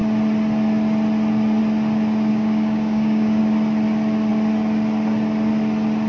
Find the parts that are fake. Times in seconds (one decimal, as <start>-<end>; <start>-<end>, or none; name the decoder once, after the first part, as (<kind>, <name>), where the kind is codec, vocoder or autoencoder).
2.3-3.4 (codec, DAC)